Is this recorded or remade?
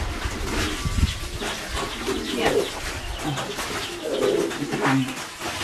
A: recorded